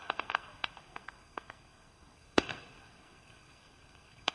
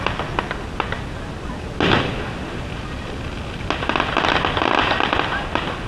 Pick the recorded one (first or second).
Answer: second